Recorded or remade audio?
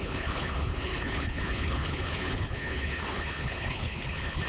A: remade